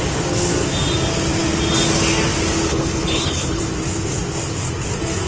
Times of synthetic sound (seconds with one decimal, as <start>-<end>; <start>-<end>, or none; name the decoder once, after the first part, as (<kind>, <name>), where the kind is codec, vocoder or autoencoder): 2.7-3.6 (codec, HILCodec)